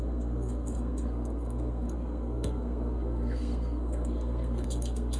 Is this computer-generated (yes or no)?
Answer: yes